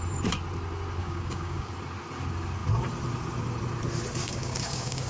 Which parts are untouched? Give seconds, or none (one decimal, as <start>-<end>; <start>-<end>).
0.0-1.0; 1.7-4.2